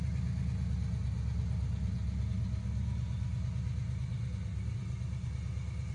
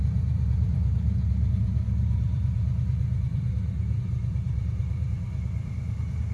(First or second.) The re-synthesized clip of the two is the second